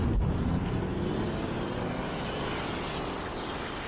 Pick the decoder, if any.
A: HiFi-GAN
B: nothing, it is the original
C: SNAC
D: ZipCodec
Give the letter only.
B